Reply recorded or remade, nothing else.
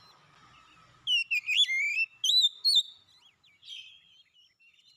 recorded